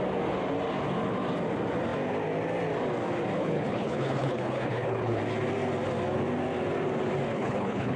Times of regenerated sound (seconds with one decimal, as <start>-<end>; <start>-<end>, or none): 3.4-5.2; 7.3-8.0